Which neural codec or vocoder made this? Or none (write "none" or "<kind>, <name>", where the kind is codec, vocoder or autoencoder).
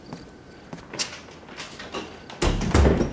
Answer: none